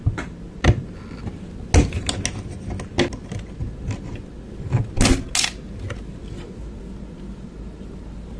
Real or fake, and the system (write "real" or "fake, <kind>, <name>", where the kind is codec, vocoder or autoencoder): real